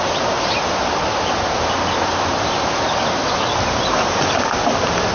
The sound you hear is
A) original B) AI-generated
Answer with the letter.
A